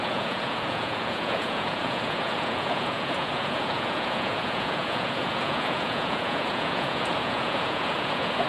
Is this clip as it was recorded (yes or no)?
no